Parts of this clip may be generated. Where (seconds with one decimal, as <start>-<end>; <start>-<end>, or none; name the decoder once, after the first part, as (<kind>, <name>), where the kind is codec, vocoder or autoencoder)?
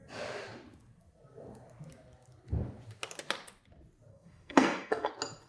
4.1-5.1 (codec, SNAC)